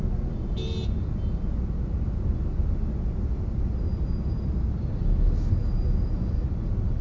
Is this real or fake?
real